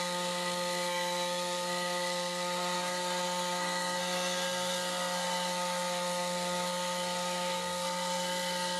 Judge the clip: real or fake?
fake